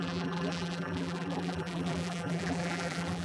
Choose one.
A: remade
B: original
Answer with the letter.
A